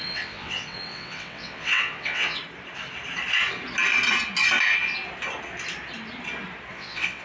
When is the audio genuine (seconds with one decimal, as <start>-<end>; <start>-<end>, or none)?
2.4-6.7